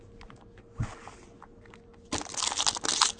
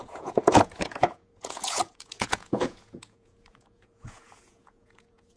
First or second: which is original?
first